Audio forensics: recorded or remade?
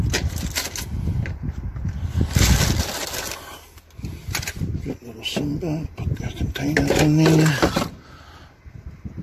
recorded